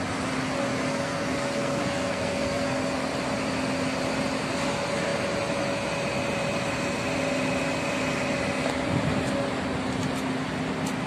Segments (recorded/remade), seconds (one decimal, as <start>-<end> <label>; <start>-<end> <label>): 0.0-0.9 recorded; 0.9-3.1 remade; 3.1-11.1 recorded